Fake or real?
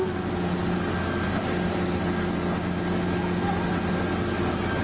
real